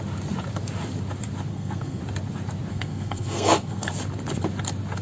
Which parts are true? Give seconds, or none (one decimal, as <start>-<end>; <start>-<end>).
0.0-1.5; 2.0-2.7; 3.9-5.0